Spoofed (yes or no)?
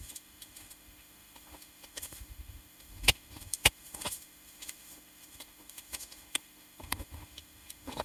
yes